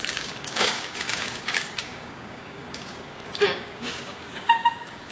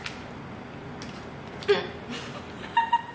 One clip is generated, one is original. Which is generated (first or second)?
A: first